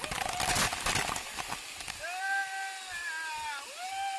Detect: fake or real real